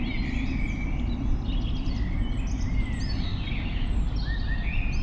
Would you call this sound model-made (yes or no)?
no